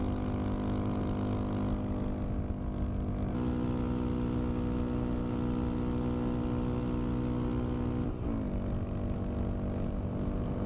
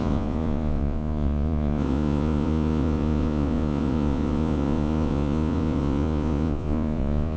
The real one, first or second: first